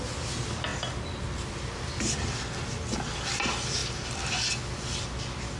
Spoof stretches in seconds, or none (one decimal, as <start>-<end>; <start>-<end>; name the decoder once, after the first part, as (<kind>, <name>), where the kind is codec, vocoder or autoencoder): none